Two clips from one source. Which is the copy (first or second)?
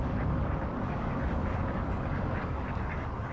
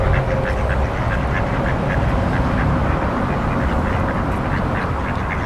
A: first